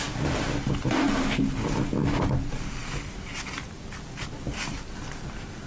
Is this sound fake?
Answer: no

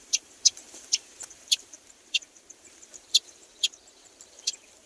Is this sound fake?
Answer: yes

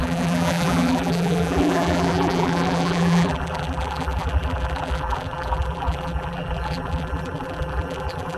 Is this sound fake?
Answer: yes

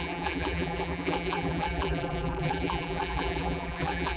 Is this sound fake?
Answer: yes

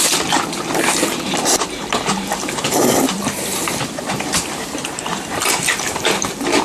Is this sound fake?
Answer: yes